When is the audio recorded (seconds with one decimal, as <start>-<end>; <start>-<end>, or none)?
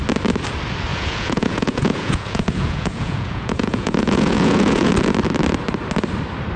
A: 0.0-0.9; 4.9-6.6